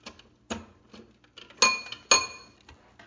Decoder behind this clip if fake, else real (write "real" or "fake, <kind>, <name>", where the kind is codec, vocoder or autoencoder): real